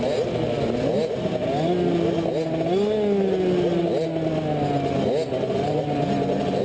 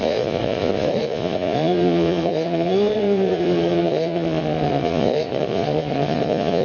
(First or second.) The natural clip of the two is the first